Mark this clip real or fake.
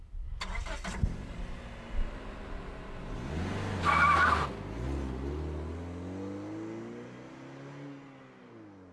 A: real